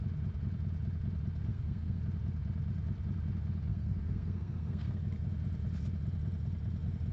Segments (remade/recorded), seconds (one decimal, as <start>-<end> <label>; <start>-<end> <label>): 0.0-1.5 recorded; 1.5-2.0 remade; 2.0-3.7 recorded; 3.7-5.0 remade; 5.0-7.1 recorded